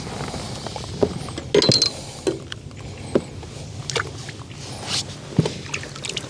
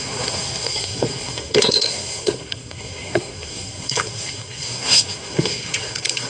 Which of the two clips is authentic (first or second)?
first